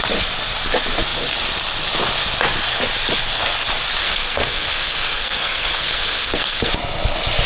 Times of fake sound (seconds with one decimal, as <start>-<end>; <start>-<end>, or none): 4.0-6.7